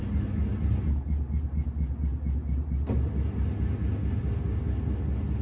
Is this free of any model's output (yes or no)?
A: yes